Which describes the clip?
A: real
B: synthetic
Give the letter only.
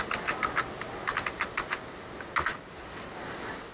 A